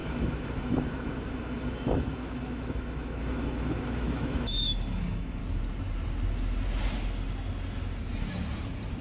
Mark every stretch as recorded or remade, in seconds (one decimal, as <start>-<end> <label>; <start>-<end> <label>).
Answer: 0.0-5.4 remade; 5.4-9.0 recorded